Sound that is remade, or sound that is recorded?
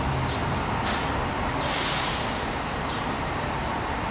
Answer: recorded